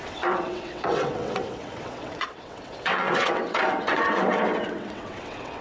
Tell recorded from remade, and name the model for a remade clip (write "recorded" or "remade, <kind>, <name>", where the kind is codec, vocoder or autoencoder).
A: remade, vocoder, WaveNeXt